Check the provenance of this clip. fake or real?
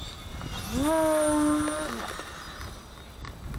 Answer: real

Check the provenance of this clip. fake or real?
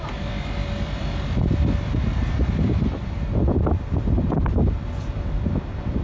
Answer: fake